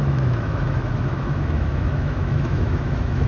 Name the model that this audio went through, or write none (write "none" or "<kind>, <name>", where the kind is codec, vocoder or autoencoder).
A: autoencoder, DAC-VAE